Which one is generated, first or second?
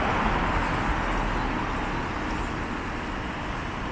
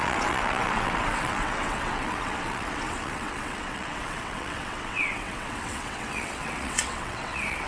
second